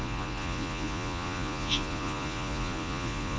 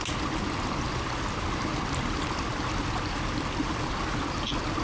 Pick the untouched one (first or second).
second